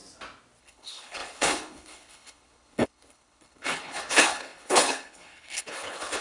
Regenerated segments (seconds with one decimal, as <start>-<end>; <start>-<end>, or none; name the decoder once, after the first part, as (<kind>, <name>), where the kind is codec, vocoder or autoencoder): 0.6-6.2 (codec, HILCodec)